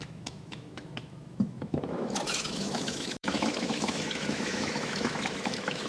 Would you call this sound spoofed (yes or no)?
yes